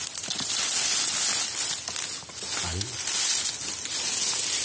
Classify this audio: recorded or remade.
recorded